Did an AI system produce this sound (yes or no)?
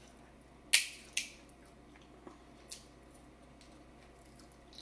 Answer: no